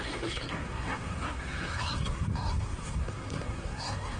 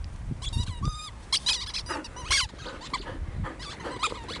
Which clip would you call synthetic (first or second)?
first